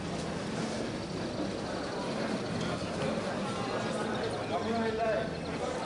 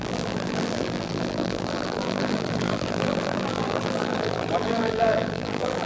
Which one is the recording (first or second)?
first